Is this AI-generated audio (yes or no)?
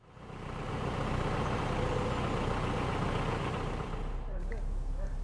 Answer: no